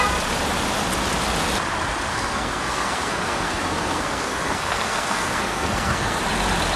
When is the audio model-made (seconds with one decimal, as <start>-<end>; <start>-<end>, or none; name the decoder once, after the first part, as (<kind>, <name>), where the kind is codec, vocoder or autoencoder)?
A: 2.1-6.2 (codec, SNAC)